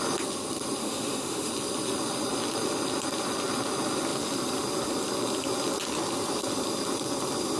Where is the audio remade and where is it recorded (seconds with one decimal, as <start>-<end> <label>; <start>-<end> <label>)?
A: 0.0-0.8 recorded; 0.8-1.5 remade; 1.5-7.6 recorded